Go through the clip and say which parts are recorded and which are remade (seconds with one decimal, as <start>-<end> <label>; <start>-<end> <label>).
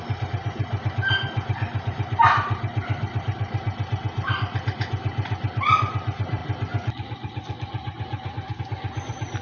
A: 0.0-9.4 recorded